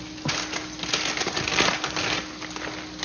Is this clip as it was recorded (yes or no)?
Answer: yes